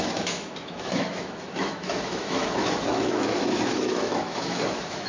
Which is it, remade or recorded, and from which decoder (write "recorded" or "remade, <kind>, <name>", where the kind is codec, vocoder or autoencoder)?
remade, autoencoder, DAC-VAE